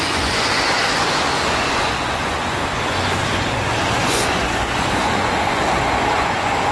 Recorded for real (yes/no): no